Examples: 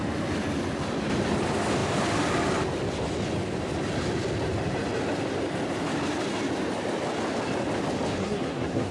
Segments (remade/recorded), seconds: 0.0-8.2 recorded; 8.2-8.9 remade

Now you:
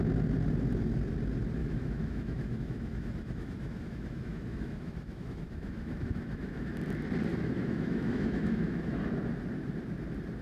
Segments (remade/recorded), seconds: 0.0-1.6 recorded; 1.6-6.7 remade; 6.7-7.3 recorded; 7.3-9.0 remade; 9.0-10.4 recorded

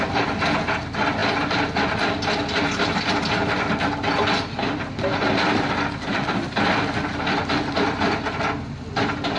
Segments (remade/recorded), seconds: 0.0-9.4 recorded

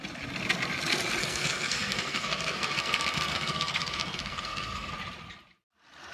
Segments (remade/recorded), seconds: 0.0-1.2 recorded; 1.2-4.9 remade; 4.9-6.1 recorded

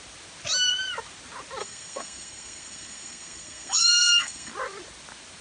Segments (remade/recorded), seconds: 0.0-1.6 recorded; 1.6-4.5 remade; 4.5-5.4 recorded